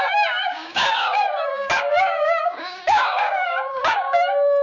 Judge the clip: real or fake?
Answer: fake